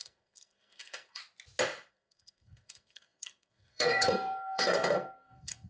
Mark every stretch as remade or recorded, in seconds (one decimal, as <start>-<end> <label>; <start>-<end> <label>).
0.0-1.2 remade; 1.2-1.9 recorded; 1.9-5.7 remade